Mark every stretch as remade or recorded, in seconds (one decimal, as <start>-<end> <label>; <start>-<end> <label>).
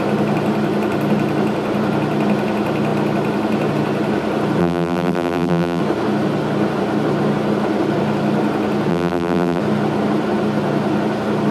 0.0-4.6 recorded; 4.6-5.8 remade; 5.8-8.9 recorded; 8.9-9.6 remade; 9.6-11.5 recorded